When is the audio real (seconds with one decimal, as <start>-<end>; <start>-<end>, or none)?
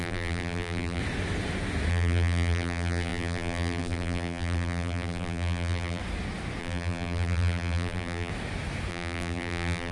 1.0-1.9; 6.0-6.6; 8.3-8.9